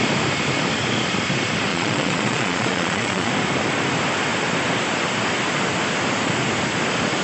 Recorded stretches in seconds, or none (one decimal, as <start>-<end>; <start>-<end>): 0.0-1.7; 3.3-7.2